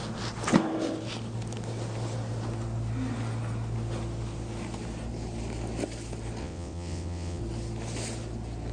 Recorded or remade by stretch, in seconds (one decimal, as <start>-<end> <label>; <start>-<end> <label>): 0.0-6.4 recorded; 6.4-7.4 remade; 7.4-8.7 recorded